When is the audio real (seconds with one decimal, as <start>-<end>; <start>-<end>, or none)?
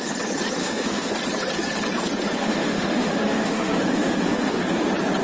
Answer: 0.0-0.6; 1.1-2.4; 4.6-5.2